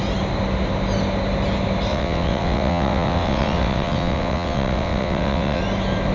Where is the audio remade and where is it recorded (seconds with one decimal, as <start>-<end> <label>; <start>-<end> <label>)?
0.0-1.9 recorded; 1.9-5.6 remade; 5.6-6.1 recorded